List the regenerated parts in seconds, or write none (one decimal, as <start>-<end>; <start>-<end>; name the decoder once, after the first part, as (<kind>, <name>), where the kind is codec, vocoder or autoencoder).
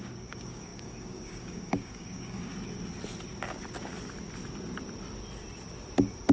0.0-2.5 (codec, DAC)